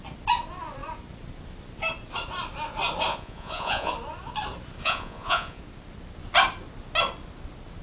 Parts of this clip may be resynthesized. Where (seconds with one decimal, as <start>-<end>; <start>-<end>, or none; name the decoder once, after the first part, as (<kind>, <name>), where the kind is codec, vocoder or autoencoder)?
3.1-3.9 (vocoder, Vocos); 4.8-5.6